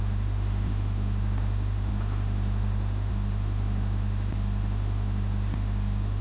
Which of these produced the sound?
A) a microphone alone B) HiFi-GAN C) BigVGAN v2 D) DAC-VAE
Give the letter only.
D